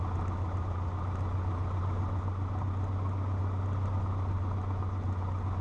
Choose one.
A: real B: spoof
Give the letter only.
A